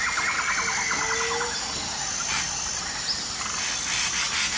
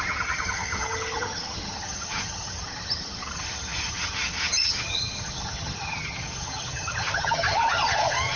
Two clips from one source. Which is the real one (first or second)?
first